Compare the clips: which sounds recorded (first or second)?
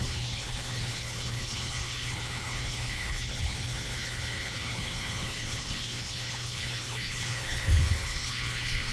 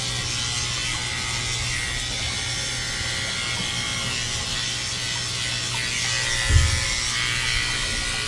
second